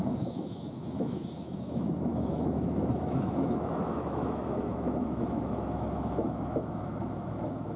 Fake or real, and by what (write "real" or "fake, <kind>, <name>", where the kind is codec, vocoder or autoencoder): fake, autoencoder, DAC-VAE